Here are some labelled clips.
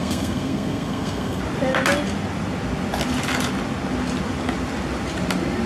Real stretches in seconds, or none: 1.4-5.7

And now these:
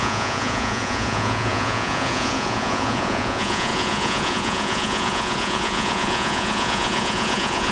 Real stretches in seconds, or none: none

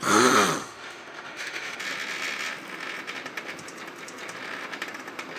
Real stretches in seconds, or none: 0.0-0.6; 1.8-5.4

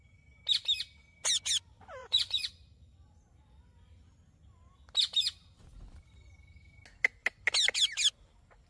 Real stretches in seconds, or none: 0.0-2.0; 2.5-8.7

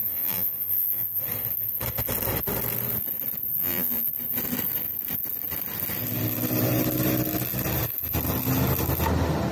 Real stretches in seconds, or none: 1.2-3.5; 4.1-9.5

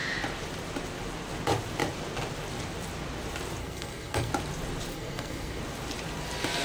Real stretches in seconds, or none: 0.0-3.6; 4.3-4.9; 5.6-6.6